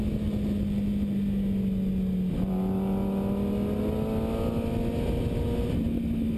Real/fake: real